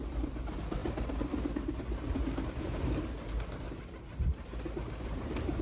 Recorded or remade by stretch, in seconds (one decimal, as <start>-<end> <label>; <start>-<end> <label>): 0.0-5.6 recorded